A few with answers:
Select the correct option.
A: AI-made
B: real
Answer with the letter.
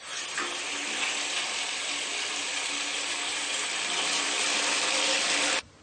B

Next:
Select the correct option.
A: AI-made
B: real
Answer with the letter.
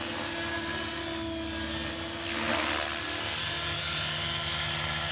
B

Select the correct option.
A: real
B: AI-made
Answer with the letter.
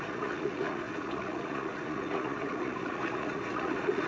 B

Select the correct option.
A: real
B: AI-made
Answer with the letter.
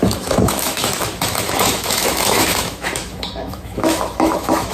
B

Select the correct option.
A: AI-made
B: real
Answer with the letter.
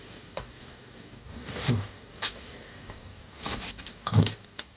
A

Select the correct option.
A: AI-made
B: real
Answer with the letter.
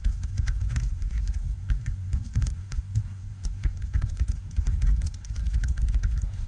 A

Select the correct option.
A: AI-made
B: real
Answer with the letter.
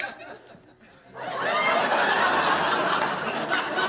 B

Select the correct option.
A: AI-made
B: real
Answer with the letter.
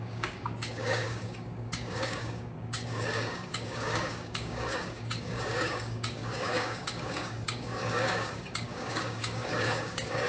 A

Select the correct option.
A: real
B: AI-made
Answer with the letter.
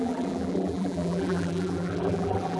B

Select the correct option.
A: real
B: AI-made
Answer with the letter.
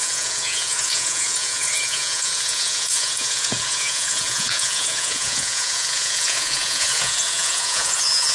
B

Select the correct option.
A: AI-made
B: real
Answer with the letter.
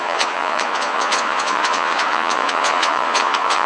A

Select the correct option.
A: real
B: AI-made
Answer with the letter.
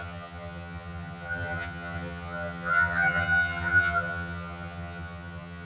B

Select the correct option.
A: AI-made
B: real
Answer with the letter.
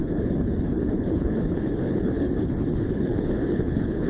A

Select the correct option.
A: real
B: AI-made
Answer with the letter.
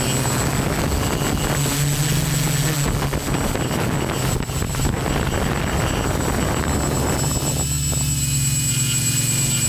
A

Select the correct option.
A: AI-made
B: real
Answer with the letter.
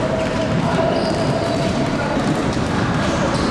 A